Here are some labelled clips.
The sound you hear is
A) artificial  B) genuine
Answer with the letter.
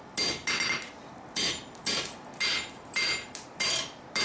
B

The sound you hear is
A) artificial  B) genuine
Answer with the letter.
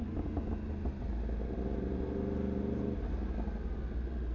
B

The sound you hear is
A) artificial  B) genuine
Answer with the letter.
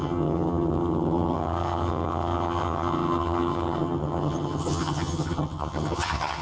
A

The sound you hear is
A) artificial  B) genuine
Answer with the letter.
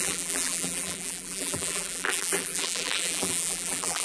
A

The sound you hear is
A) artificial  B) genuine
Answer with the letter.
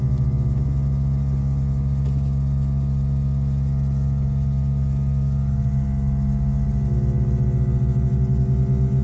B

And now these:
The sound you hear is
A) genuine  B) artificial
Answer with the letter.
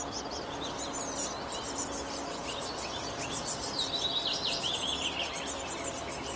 A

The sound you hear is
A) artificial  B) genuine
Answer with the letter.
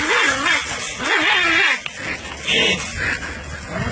B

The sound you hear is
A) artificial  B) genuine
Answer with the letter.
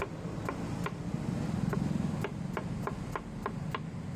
B